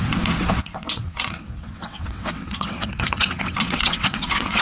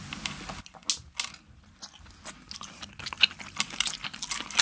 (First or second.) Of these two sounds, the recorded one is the second